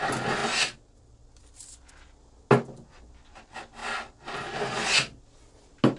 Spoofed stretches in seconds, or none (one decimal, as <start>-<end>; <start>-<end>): none